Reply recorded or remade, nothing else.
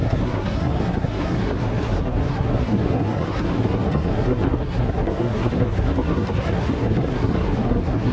remade